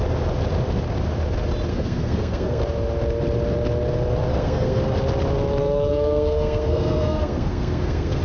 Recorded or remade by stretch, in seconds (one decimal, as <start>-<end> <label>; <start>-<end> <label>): 0.0-1.7 recorded; 1.7-2.6 remade; 2.6-4.3 recorded; 4.3-4.8 remade; 4.8-5.6 recorded; 5.6-8.2 remade